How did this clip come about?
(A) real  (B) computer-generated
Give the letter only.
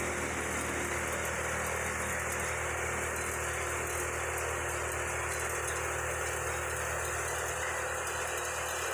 A